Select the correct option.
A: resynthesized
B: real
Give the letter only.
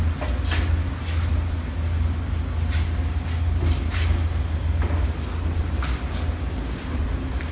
B